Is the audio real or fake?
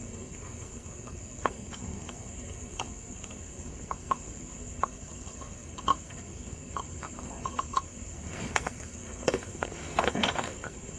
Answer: fake